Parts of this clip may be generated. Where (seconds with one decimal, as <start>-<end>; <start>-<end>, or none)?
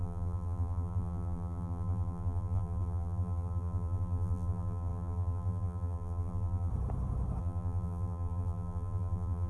0.0-6.7; 7.4-9.5